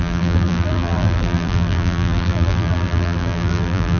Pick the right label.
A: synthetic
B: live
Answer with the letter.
A